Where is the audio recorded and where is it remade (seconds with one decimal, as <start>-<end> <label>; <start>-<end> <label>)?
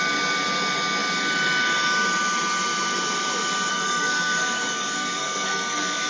0.0-3.7 recorded; 3.7-6.1 remade